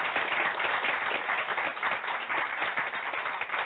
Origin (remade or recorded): recorded